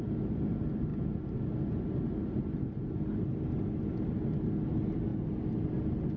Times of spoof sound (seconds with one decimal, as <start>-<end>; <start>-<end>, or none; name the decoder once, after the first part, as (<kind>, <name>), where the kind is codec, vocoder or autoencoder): none